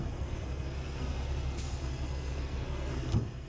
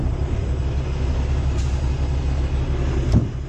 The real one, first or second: second